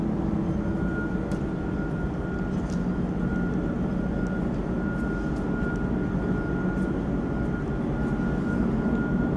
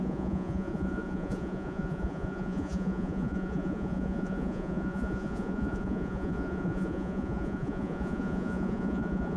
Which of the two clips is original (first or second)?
first